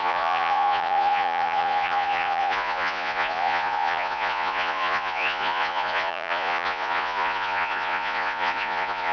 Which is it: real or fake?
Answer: fake